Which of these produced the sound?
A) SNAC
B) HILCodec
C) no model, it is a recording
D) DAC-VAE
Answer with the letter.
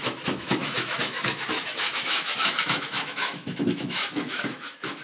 D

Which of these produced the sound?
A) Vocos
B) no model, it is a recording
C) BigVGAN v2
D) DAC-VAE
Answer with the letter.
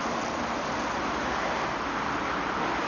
B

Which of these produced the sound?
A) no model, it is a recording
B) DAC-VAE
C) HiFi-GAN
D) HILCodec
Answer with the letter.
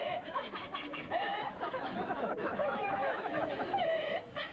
B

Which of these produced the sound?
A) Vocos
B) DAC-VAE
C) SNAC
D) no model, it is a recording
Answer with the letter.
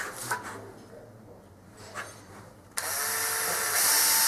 D